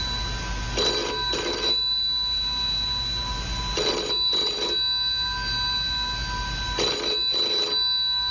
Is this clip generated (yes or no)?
no